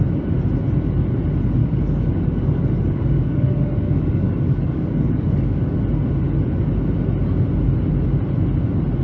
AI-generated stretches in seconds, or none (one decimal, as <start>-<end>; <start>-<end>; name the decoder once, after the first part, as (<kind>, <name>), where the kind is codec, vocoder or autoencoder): 1.6-5.8 (codec, DAC)

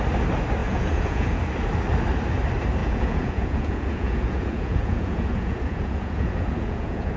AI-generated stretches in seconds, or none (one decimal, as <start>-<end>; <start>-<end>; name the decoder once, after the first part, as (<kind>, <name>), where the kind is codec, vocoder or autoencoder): 0.6-1.4 (vocoder, Vocos); 2.8-7.2